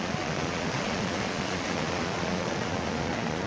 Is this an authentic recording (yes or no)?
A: no